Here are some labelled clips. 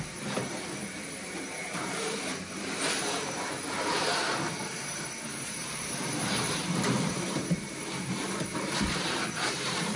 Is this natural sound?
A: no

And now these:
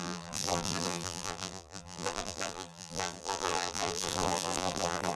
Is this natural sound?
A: no